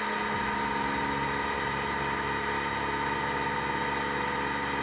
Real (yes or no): yes